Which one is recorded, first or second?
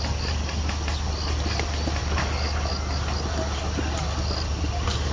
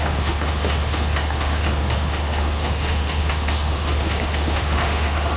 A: first